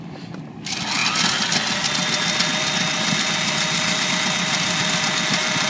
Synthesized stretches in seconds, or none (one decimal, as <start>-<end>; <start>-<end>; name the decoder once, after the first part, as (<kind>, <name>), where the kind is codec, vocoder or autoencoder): none